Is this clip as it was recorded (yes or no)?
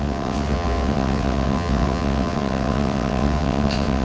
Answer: no